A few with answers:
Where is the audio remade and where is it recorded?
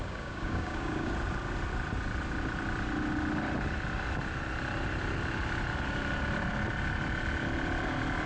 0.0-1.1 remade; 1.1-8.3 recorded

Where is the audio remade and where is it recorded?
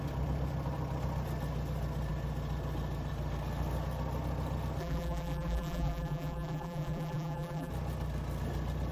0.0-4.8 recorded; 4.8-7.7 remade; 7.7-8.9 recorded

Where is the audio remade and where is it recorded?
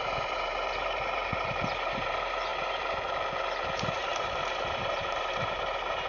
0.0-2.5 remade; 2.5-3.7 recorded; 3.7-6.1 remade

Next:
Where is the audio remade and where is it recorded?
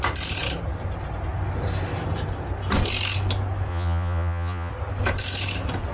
0.0-3.7 recorded; 3.7-4.7 remade; 4.7-5.9 recorded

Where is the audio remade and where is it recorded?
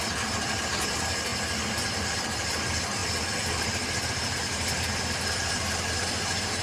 0.0-1.3 remade; 1.3-2.0 recorded; 2.0-3.0 remade; 3.0-4.1 recorded; 4.1-6.6 remade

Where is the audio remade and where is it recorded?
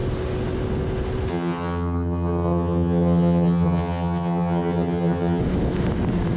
0.0-1.3 recorded; 1.3-5.4 remade; 5.4-6.4 recorded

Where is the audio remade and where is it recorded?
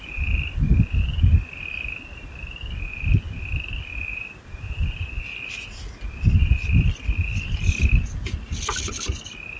0.0-4.1 recorded; 4.1-5.2 remade; 5.2-9.6 recorded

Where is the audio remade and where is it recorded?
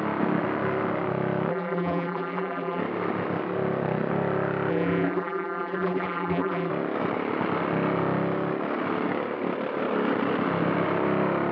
0.0-1.5 recorded; 1.5-2.8 remade; 2.8-4.7 recorded; 4.7-6.7 remade; 6.7-11.5 recorded